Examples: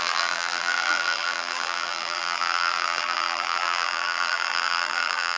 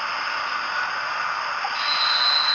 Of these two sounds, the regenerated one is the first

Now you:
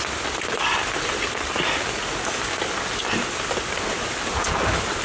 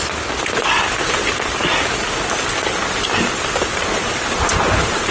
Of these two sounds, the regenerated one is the second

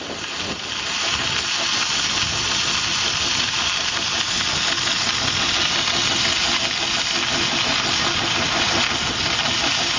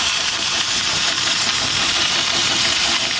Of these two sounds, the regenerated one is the second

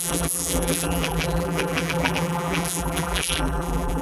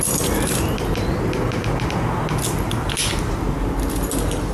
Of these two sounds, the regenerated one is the first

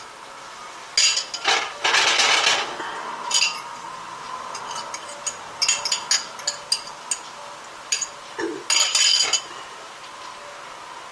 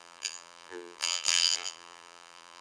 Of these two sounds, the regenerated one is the second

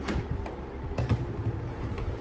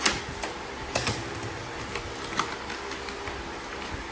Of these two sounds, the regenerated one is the first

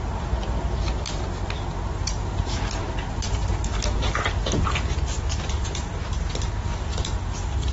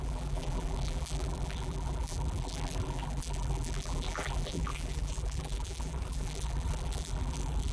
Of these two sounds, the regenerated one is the second